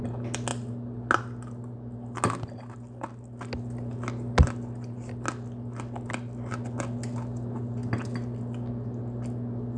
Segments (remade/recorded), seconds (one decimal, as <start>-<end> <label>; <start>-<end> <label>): 0.0-9.8 recorded